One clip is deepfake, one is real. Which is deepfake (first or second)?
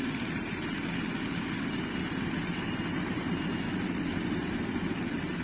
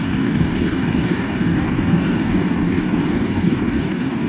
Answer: second